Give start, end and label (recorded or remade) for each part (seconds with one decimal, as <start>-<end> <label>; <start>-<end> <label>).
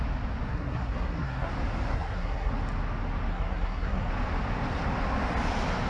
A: 0.0-0.5 recorded; 0.5-1.5 remade; 1.5-1.9 recorded; 1.9-2.5 remade; 2.5-3.3 recorded; 3.3-4.1 remade; 4.1-5.9 recorded